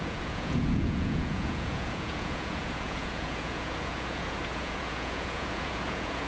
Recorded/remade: remade